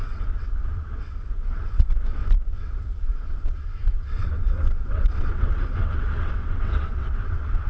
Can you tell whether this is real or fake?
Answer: fake